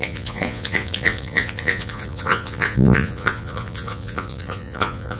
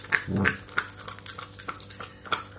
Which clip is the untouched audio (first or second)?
second